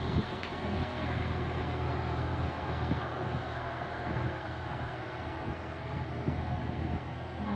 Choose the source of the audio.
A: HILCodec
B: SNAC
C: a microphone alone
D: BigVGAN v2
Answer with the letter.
B